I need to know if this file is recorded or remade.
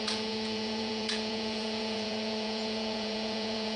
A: remade